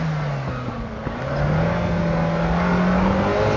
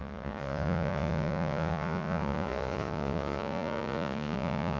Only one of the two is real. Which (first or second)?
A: first